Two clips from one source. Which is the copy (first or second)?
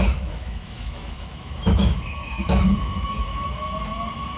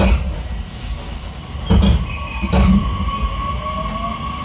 first